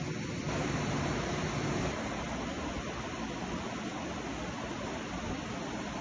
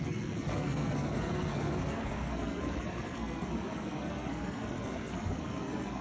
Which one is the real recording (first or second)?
first